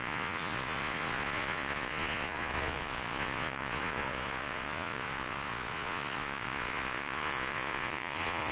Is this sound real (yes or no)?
no